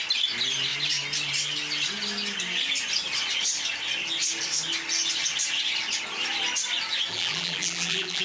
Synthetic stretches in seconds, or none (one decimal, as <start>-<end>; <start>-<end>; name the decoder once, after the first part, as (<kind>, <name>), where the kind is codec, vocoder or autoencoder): 7.1-8.2 (vocoder, BigVGAN v2)